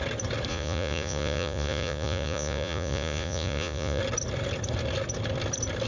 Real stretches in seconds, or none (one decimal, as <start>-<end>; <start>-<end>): 0.0-0.5; 4.0-5.9